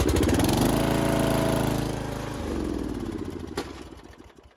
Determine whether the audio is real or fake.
real